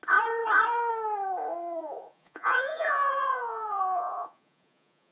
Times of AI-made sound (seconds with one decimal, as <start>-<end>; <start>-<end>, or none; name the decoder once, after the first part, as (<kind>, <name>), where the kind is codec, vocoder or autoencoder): 1.8-5.1 (vocoder, Vocos)